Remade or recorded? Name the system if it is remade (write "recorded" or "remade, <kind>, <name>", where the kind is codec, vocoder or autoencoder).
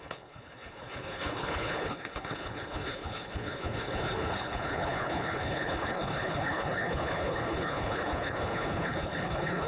remade, codec, HILCodec